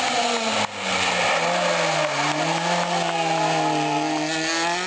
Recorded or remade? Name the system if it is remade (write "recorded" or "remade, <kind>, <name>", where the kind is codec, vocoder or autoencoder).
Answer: recorded